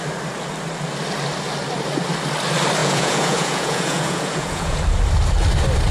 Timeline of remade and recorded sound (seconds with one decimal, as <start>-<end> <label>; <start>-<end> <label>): 0.0-2.8 recorded; 2.8-4.8 remade; 4.8-5.9 recorded